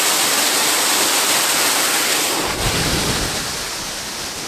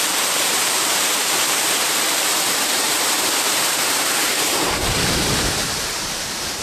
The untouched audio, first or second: first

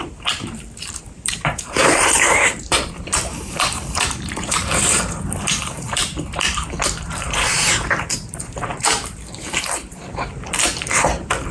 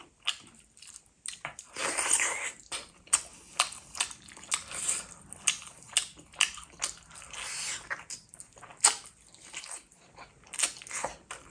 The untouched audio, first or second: second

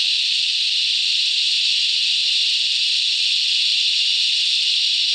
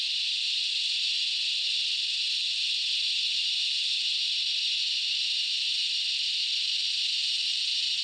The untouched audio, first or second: second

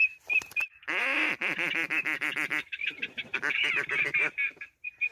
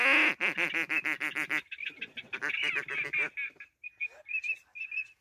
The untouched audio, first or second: second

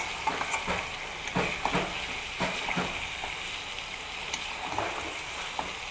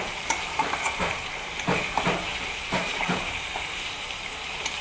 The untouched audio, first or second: first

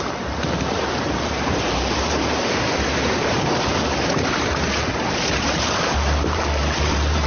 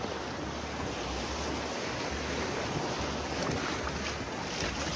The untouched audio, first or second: second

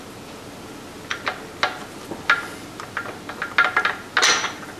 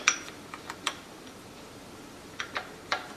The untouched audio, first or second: first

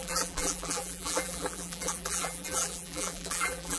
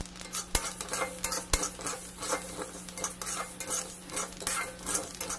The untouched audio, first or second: second